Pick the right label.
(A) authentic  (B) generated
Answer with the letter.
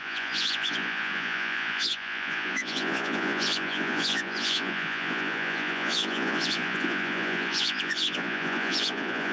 B